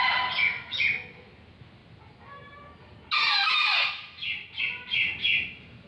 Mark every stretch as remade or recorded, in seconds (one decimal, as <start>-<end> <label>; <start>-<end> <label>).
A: 0.0-5.9 recorded